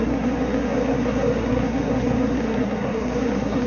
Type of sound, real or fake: fake